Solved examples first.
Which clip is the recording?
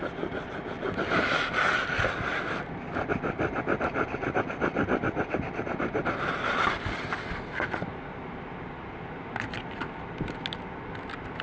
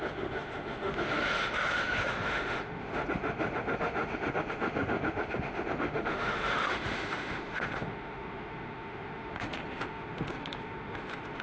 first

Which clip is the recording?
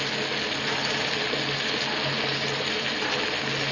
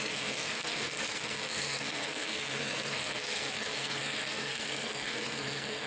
first